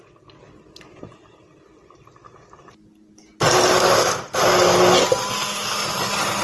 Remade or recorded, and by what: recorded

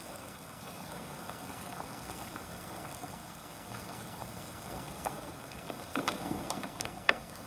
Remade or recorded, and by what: remade, codec, SNAC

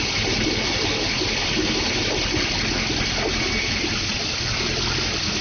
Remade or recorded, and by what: recorded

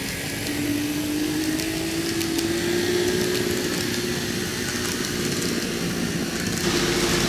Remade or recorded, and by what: recorded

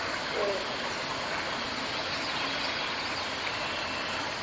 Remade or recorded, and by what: recorded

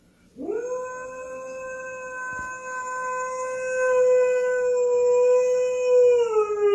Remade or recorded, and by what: recorded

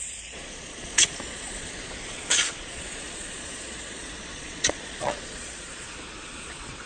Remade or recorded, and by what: remade, vocoder, Vocos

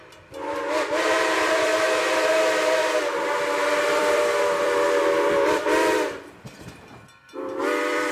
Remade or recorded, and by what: remade, vocoder, BigVGAN v2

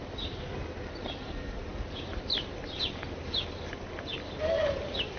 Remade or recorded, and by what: recorded